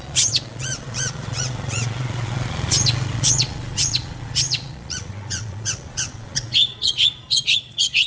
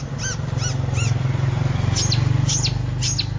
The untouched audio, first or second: second